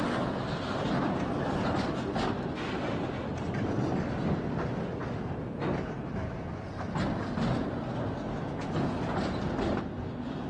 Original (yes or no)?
yes